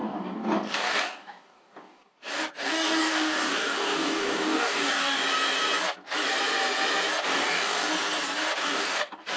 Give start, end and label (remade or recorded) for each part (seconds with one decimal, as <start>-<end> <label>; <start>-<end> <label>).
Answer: 0.0-5.2 remade; 5.2-7.3 recorded; 7.3-7.9 remade; 7.9-8.6 recorded; 8.6-9.4 remade